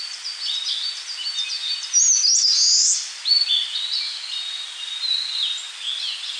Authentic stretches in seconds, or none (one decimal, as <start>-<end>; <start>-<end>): 0.0-6.4